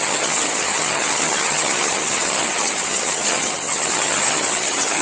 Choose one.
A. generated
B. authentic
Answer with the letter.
A